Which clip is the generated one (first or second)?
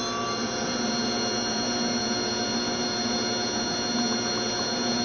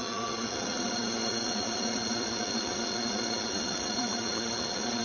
second